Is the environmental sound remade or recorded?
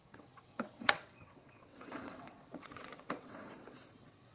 remade